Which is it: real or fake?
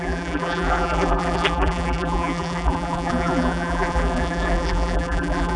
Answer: fake